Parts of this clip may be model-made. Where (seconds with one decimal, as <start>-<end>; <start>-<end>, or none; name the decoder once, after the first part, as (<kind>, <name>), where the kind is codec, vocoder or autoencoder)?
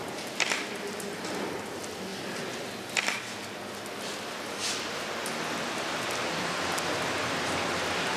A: none